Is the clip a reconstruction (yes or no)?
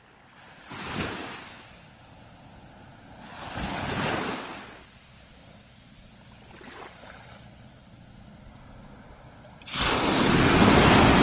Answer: no